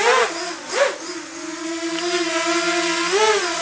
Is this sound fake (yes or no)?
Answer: no